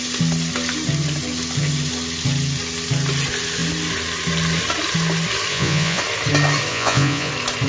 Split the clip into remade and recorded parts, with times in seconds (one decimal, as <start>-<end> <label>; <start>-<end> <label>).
0.0-5.5 recorded; 5.5-6.0 remade; 6.0-6.7 recorded; 6.7-7.3 remade; 7.3-7.7 recorded